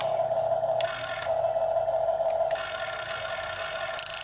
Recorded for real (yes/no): yes